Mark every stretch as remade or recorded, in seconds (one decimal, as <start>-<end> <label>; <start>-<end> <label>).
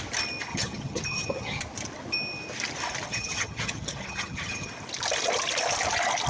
0.0-0.5 recorded; 0.5-1.6 remade; 1.6-3.1 recorded; 3.1-4.7 remade; 4.7-6.3 recorded